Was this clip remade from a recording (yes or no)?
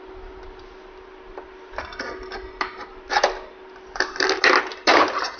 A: no